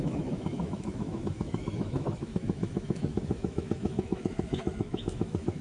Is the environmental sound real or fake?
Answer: fake